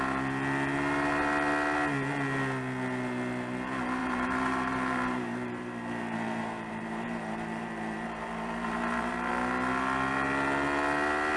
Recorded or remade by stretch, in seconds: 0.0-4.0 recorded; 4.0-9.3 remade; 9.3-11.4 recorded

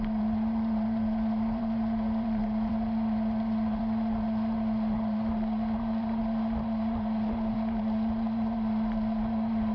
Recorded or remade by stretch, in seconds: 0.0-9.7 remade

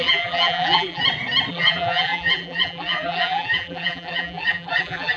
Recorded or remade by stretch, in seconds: 0.0-1.0 remade; 1.0-1.5 recorded; 1.5-5.2 remade

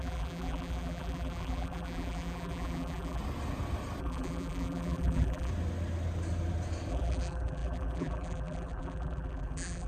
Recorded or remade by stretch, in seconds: 0.0-3.2 remade; 3.2-4.0 recorded; 4.0-5.5 remade; 5.5-6.9 recorded; 6.9-9.9 remade

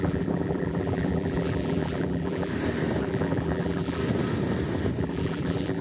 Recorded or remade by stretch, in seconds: 0.0-2.5 remade; 2.5-3.0 recorded; 3.0-4.0 remade; 4.0-5.0 recorded; 5.0-5.8 remade

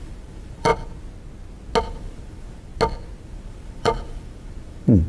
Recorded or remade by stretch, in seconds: 0.0-0.7 remade; 0.7-1.8 recorded; 1.8-2.7 remade; 2.7-3.2 recorded; 3.2-5.1 remade

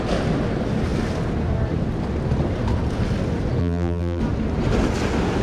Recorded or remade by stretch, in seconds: 0.0-3.6 recorded; 3.6-4.2 remade; 4.2-5.4 recorded